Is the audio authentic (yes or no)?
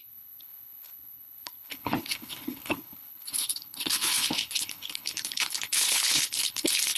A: no